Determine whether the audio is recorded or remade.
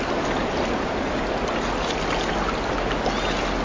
recorded